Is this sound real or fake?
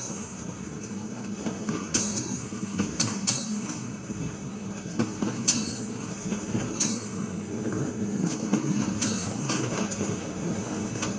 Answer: fake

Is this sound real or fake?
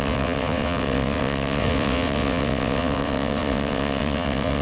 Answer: fake